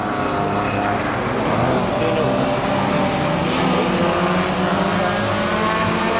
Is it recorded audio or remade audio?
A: recorded